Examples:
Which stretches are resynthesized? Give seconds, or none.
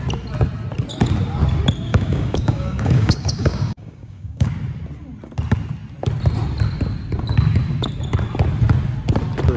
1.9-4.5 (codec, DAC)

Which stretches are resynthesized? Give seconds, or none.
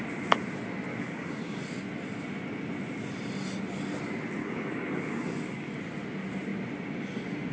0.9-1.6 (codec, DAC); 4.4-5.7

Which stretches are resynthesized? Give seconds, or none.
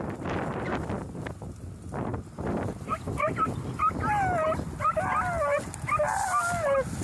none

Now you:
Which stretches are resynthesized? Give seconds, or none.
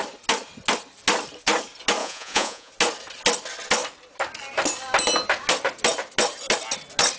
2.0-2.7 (vocoder, Vocos)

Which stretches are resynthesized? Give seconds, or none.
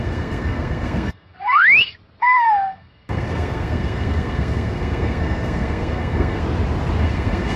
0.0-1.6 (codec, SNAC); 2.2-6.4; 7.0-7.6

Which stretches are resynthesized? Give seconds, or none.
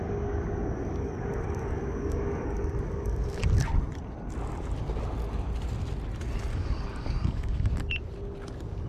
0.0-3.4 (codec, DAC); 6.5-7.7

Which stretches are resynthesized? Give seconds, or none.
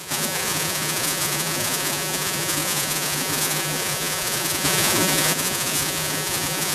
0.0-6.7 (vocoder, Vocos)